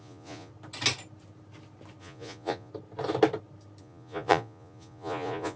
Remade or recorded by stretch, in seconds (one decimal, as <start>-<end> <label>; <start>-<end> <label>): 0.0-0.5 remade; 0.5-2.0 recorded; 2.0-2.7 remade; 2.7-3.8 recorded; 3.8-5.6 remade